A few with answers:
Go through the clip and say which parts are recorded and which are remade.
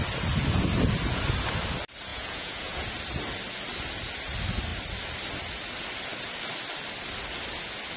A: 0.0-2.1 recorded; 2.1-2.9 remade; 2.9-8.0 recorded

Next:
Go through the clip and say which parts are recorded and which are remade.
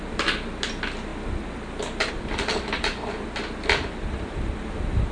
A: 0.0-5.1 recorded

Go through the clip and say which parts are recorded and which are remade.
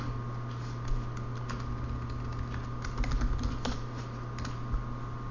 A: 0.0-5.3 recorded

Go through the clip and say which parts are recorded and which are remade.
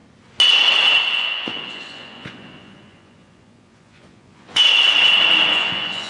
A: 0.0-1.1 recorded; 1.1-4.6 remade; 4.6-5.5 recorded; 5.5-6.1 remade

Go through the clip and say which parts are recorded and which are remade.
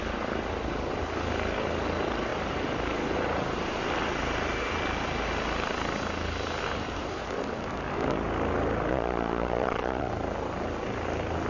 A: 0.0-8.9 recorded; 8.9-10.1 remade; 10.1-11.5 recorded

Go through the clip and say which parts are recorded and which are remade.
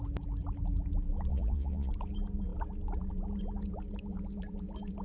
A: 0.0-1.3 recorded; 1.3-1.9 remade; 1.9-5.0 recorded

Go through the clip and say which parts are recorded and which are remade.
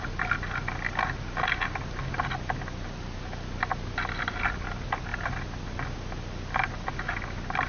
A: 0.0-7.7 recorded